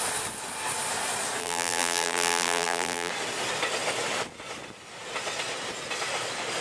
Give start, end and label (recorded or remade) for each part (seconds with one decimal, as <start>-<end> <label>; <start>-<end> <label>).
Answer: 0.0-1.4 recorded; 1.4-3.1 remade; 3.1-6.6 recorded